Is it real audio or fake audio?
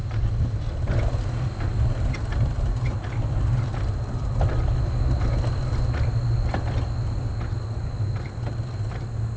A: real